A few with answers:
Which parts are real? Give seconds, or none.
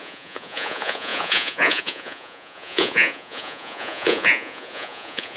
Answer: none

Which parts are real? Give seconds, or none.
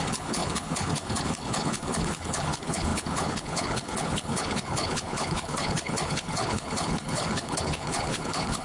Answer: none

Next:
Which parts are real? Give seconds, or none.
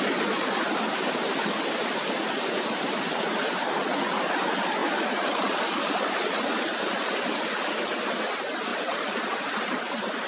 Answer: 0.0-4.8; 5.8-8.7; 9.8-10.3